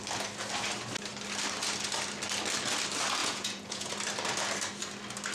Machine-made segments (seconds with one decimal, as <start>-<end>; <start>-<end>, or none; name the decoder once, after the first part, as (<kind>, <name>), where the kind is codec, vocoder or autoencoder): 3.2-3.9 (vocoder, Vocos)